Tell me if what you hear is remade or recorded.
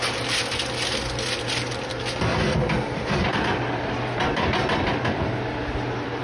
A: recorded